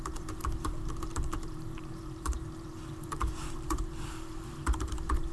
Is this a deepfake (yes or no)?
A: yes